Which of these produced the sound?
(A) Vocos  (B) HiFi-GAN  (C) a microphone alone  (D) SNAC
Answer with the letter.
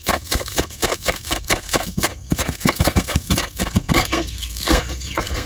D